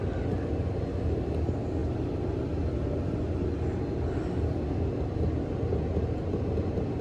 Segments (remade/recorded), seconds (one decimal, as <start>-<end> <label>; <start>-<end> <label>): 0.0-7.0 recorded